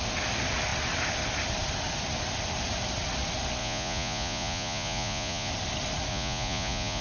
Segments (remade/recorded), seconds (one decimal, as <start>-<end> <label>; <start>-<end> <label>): 0.0-3.6 recorded; 3.6-5.5 remade; 5.5-6.1 recorded; 6.1-7.0 remade